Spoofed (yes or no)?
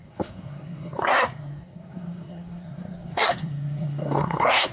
yes